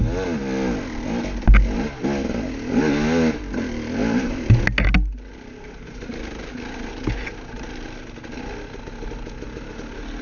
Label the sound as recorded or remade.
recorded